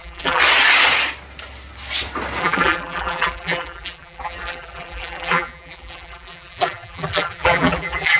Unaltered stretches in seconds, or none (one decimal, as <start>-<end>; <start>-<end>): 0.4-2.4